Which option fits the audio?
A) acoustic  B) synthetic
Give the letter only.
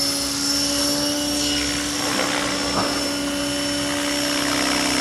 A